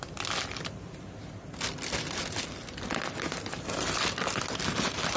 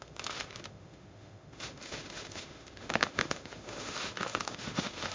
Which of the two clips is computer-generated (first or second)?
second